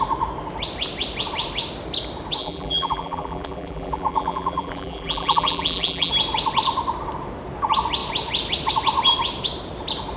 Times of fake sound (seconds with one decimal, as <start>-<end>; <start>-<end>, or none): 2.4-6.1